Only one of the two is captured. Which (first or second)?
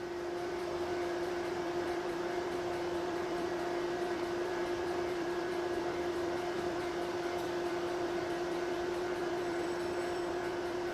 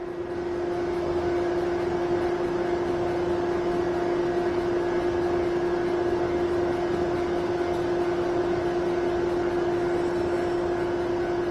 second